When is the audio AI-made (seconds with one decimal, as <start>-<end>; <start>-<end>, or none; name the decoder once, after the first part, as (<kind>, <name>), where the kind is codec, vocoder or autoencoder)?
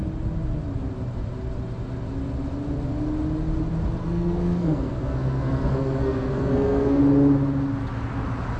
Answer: 4.0-7.0 (codec, SNAC)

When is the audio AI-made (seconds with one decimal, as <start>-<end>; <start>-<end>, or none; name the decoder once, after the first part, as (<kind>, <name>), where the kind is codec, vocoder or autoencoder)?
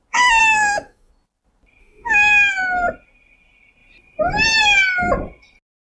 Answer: 0.4-1.1 (autoencoder, DAC-VAE); 1.8-2.5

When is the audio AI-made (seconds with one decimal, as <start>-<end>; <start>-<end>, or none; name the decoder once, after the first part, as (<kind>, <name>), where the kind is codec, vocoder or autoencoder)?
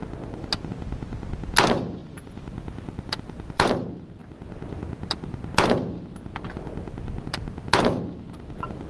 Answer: 2.0-3.7 (vocoder, BigVGAN v2)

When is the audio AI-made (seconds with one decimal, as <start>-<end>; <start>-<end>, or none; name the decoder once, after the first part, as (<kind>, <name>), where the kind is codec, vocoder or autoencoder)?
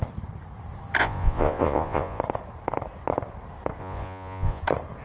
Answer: 1.0-2.2 (vocoder, Vocos); 3.8-4.6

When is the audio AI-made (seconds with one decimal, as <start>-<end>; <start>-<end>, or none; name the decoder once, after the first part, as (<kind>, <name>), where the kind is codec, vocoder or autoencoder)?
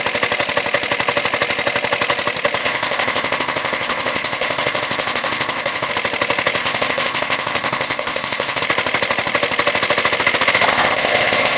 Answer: 2.6-5.9 (codec, ZipCodec); 6.6-8.6; 10.7-11.6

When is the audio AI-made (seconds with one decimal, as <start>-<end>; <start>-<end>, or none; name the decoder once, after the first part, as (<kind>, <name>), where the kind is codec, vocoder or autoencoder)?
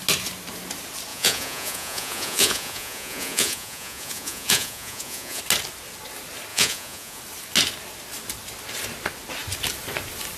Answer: 1.1-5.4 (vocoder, Vocos); 6.5-7.2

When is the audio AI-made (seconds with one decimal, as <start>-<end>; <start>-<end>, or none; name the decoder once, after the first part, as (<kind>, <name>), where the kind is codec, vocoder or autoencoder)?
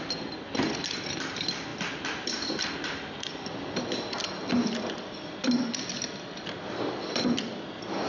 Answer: none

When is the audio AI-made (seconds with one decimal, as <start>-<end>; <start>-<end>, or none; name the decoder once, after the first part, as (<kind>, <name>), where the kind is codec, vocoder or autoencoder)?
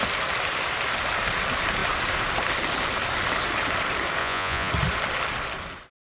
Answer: 4.2-4.7 (vocoder, Vocos)